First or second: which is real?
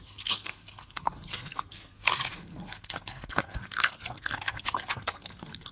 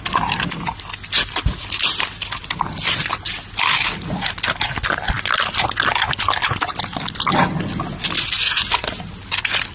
second